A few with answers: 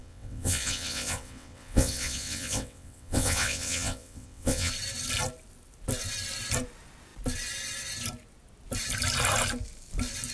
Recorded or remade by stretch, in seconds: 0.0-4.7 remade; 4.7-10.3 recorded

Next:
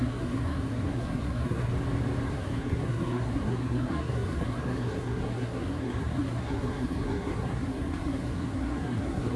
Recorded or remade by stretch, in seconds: 0.0-1.7 remade; 1.7-2.3 recorded; 2.3-9.4 remade